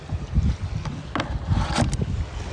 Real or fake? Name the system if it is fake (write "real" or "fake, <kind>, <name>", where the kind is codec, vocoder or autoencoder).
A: real